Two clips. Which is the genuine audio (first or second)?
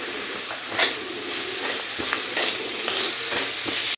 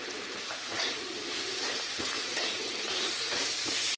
first